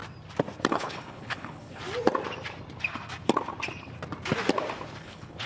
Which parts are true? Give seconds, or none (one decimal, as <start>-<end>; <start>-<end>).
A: 0.0-0.7; 1.8-5.0